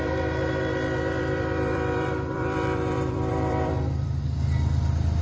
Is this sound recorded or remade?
remade